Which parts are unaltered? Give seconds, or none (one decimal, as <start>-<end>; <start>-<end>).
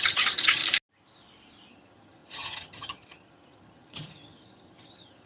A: 0.6-1.7